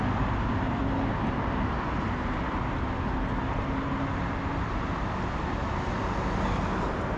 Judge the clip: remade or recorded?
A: recorded